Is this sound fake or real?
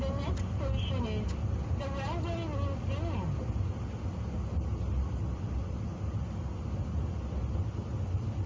real